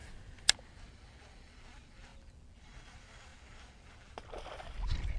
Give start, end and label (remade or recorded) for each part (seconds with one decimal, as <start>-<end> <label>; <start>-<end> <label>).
0.0-5.2 recorded